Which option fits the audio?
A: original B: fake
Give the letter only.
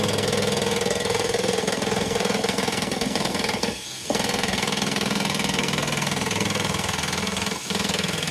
B